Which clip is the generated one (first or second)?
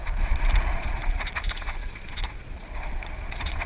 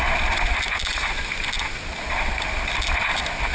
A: first